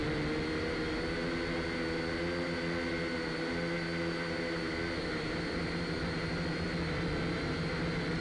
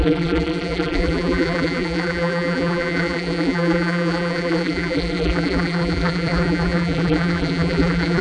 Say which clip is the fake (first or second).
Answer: second